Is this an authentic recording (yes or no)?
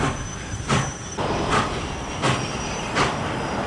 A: yes